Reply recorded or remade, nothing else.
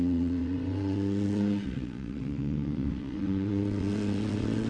remade